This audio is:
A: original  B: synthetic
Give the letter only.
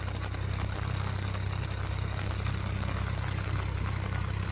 A